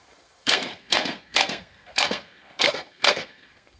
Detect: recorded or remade remade